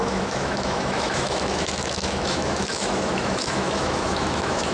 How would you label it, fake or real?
fake